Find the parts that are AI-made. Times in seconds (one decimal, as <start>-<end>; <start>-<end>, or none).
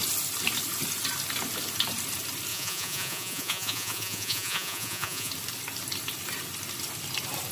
2.5-5.3